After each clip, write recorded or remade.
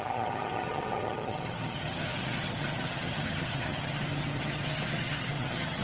remade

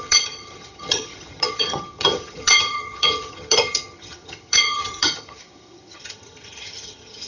remade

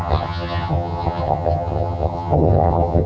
remade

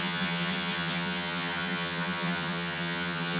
remade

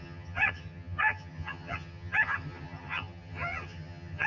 remade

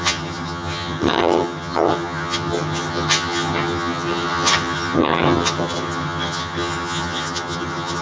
remade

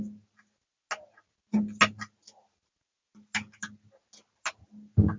recorded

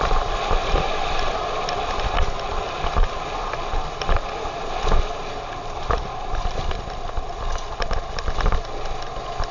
recorded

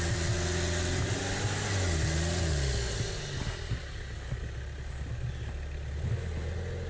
recorded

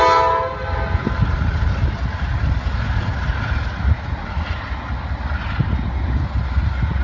recorded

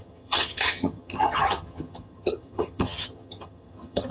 remade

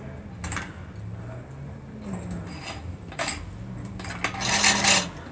recorded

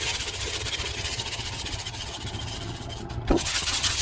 remade